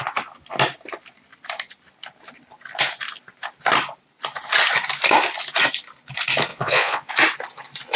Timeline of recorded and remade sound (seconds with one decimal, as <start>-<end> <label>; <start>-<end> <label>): 0.0-6.5 recorded; 6.5-7.1 remade; 7.1-8.0 recorded